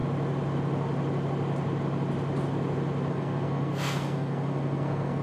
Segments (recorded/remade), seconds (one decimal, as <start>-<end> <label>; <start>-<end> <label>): 0.0-3.1 recorded; 3.1-5.2 remade